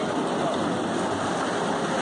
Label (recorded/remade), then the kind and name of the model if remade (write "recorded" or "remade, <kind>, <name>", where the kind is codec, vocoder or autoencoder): recorded